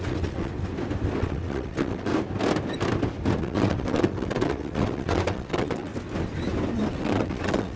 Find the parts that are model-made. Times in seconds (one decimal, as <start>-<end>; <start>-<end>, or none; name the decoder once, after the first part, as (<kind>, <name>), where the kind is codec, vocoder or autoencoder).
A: 0.0-0.5 (vocoder, WaveNeXt); 1.2-2.1; 3.4-5.9; 6.9-7.8